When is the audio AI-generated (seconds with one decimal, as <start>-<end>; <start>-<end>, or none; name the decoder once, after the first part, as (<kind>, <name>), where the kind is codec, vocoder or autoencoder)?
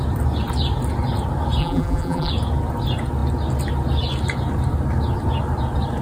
1.6-2.3 (vocoder, BigVGAN v2)